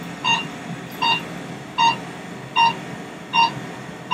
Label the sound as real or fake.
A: real